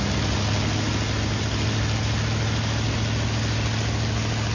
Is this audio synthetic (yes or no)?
no